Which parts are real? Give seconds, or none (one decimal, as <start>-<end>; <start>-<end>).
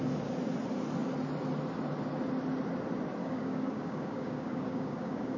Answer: 0.0-3.2